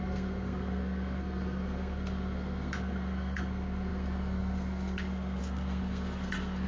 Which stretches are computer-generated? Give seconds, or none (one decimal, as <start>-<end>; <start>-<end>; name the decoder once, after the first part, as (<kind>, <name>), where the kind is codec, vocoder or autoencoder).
0.0-6.7 (codec, SNAC)